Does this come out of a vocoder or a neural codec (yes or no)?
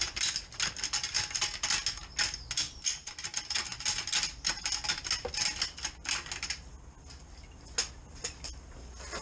no